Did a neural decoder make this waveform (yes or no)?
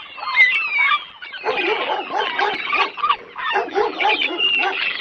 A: yes